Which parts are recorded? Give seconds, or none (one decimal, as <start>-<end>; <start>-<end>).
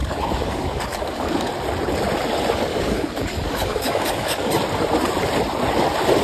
1.5-2.7; 4.5-6.2